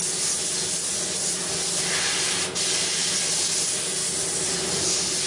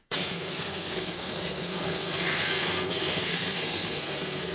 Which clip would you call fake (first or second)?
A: second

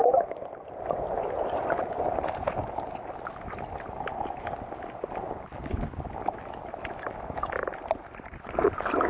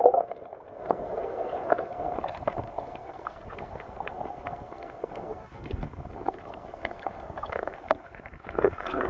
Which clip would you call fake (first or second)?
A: second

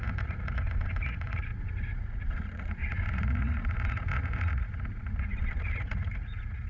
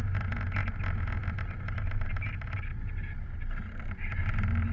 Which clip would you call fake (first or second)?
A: first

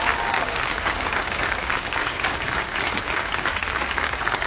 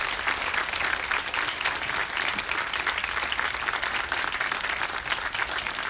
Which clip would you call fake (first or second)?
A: first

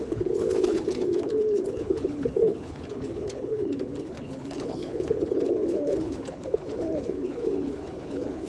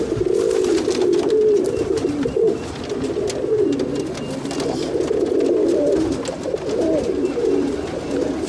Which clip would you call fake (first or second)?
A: first